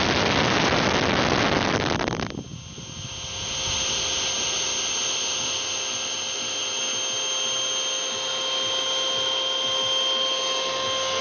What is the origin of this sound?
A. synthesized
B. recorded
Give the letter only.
B